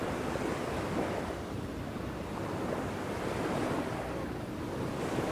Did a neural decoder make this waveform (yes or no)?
yes